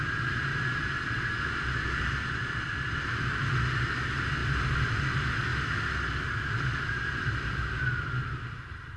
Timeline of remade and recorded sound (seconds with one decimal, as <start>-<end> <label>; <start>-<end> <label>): 0.0-0.5 recorded; 0.5-2.0 remade; 2.0-4.4 recorded; 4.4-4.9 remade; 4.9-9.0 recorded